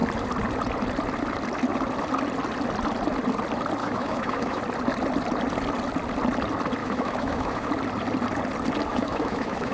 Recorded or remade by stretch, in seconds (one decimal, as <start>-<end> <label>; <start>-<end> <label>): 0.0-3.8 recorded; 3.8-4.6 remade; 4.6-6.8 recorded; 6.8-7.7 remade; 7.7-8.9 recorded; 8.9-9.7 remade